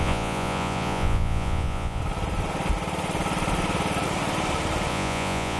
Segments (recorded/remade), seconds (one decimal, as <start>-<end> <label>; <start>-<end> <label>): 0.0-2.0 remade; 2.0-4.9 recorded; 4.9-5.6 remade